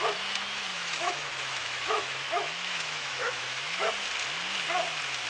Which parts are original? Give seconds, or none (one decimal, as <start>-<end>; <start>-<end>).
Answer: 0.0-0.7; 3.9-5.3